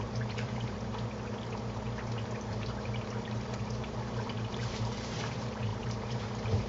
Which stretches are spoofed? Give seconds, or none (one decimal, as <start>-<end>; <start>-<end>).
0.0-0.9; 2.5-6.7